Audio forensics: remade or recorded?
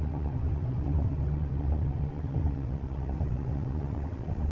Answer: remade